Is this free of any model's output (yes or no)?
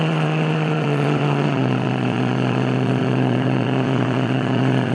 no